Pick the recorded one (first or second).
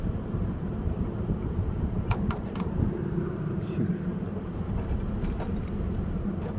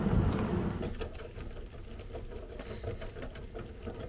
second